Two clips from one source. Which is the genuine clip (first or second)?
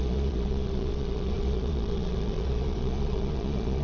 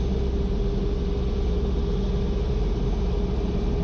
second